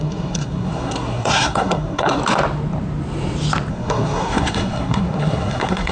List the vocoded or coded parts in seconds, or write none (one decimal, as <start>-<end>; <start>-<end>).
0.0-2.2; 3.7-5.9